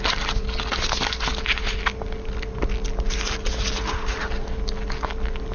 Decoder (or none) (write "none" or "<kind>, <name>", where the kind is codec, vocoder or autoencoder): none